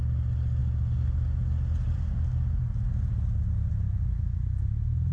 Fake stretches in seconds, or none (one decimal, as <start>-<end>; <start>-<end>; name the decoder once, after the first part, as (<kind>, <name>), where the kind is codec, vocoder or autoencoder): none